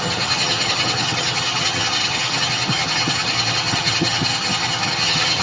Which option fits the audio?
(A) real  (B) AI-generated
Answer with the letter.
B